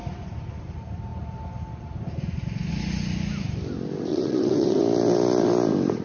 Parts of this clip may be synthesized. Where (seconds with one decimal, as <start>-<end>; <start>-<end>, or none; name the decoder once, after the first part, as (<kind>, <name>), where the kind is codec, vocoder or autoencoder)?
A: 4.1-4.8 (vocoder, WaveNeXt)